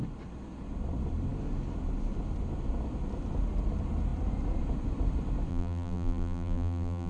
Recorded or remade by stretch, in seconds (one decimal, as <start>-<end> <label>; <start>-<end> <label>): 0.0-5.5 recorded; 5.5-7.1 remade